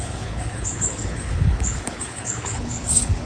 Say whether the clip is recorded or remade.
remade